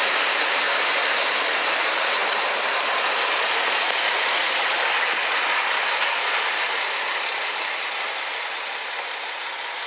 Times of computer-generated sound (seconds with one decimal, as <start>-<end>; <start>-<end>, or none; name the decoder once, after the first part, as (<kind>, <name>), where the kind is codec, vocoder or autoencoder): none